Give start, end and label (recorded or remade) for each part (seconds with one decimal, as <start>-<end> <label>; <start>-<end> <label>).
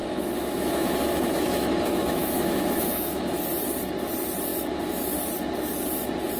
0.0-3.3 remade; 3.3-6.4 recorded